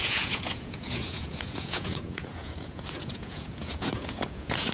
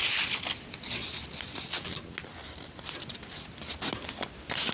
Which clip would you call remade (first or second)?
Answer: first